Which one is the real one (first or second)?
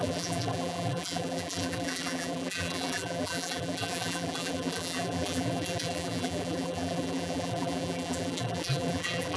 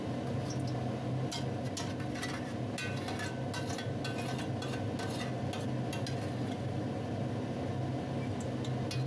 second